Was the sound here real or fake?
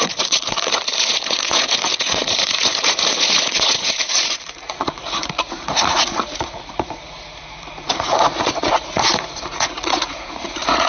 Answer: fake